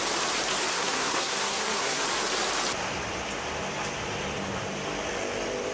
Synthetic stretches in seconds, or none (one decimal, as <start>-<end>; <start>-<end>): 0.7-2.0